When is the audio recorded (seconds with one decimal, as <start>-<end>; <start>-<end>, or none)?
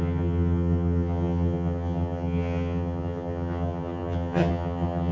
none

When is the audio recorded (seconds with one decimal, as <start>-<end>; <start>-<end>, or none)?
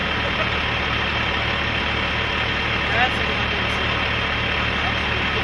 0.0-5.4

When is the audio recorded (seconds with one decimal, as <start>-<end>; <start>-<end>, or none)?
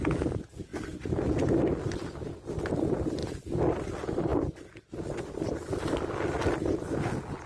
0.0-7.5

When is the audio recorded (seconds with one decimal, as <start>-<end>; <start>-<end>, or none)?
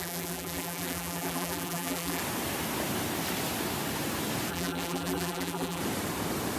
2.2-4.5; 5.8-6.6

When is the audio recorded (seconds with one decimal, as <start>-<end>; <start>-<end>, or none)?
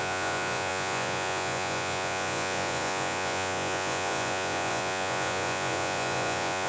none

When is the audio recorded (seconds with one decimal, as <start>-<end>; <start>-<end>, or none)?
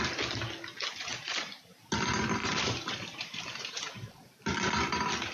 0.0-1.1; 1.8-2.4; 4.7-5.3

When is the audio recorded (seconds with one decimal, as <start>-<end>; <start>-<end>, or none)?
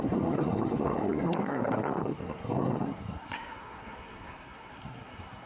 none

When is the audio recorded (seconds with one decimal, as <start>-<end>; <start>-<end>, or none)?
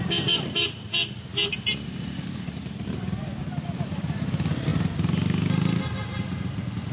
0.0-6.9